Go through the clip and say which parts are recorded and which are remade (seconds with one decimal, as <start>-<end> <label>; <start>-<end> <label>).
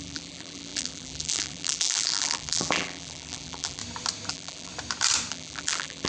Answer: 0.0-3.8 remade; 3.8-4.3 recorded; 4.3-4.7 remade; 4.7-5.3 recorded; 5.3-6.1 remade